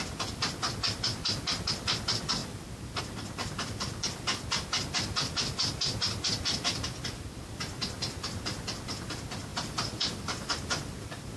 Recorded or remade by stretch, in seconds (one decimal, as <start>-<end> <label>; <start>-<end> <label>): 0.0-9.5 recorded; 9.5-10.8 remade; 10.8-11.4 recorded